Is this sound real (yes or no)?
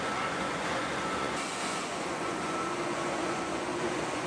no